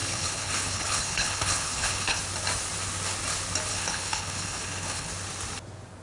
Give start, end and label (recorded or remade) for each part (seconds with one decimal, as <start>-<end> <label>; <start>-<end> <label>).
0.0-2.2 remade; 2.2-3.7 recorded; 3.7-5.1 remade; 5.1-6.0 recorded